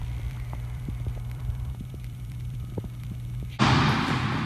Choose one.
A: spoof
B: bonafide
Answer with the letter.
A